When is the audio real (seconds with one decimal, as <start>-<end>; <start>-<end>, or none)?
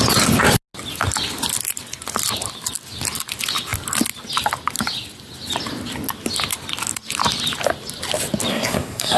0.0-8.5